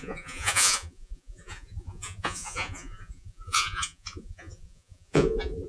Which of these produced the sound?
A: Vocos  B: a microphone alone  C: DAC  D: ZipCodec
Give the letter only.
A